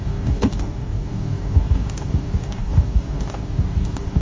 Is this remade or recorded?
remade